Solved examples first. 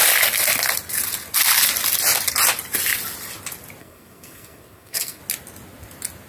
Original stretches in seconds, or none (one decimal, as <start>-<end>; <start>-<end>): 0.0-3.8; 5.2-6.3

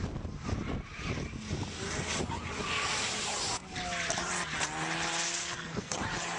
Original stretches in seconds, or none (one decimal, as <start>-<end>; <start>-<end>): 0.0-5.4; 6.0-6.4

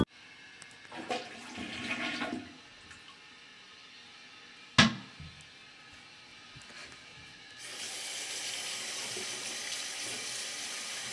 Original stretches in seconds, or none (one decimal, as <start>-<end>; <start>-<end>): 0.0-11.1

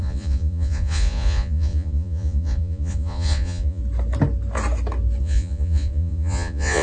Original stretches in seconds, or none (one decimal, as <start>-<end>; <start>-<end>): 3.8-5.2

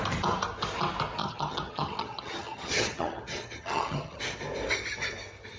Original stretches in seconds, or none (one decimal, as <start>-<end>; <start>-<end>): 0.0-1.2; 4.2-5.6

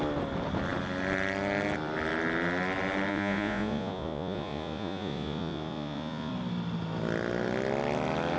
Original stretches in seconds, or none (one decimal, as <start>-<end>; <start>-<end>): 0.0-3.1; 6.3-8.4